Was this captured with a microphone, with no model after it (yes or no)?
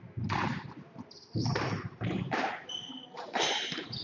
no